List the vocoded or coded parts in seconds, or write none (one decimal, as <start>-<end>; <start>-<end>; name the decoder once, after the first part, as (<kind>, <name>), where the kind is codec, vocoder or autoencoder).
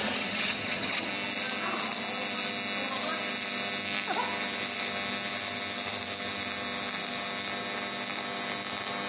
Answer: 0.0-1.1 (vocoder, HiFi-GAN)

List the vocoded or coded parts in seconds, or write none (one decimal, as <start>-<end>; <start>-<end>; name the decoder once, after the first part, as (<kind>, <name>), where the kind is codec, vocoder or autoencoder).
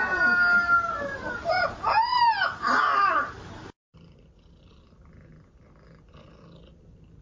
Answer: none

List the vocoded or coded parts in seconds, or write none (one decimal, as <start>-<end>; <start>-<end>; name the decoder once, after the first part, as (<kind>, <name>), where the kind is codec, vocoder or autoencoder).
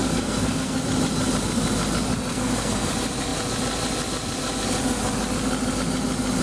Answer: 0.0-0.8 (codec, SNAC); 2.3-2.9